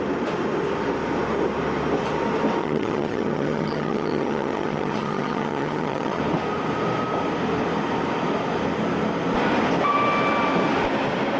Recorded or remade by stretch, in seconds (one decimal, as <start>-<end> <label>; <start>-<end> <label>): 0.0-2.6 recorded; 2.6-6.2 remade; 6.2-11.4 recorded